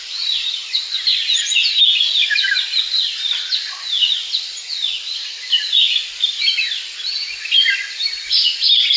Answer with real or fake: real